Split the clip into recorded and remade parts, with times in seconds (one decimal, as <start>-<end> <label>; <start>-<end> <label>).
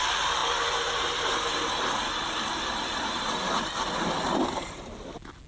0.0-5.5 recorded